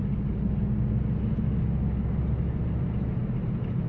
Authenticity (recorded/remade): recorded